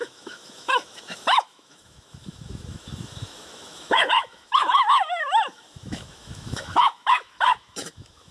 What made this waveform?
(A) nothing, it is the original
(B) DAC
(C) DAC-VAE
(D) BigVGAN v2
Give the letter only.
C